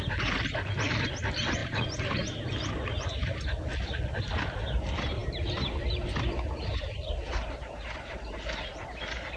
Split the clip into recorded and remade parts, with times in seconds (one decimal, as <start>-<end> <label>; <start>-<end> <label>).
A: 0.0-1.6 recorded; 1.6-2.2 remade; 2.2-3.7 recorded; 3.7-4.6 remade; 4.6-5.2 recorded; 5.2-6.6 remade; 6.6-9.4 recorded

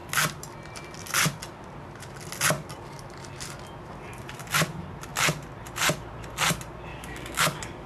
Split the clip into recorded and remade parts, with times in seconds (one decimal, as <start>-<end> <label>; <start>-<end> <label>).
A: 0.0-6.9 recorded; 6.9-7.9 remade

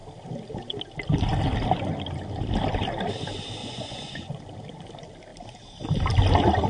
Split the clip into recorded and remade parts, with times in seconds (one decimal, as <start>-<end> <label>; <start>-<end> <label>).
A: 0.0-3.6 recorded; 3.6-4.4 remade; 4.4-6.7 recorded